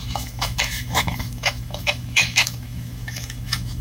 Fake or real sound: fake